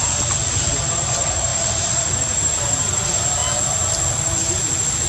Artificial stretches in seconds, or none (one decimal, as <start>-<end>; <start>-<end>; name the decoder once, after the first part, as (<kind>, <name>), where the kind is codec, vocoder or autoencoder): 0.7-3.4 (vocoder, BigVGAN v2)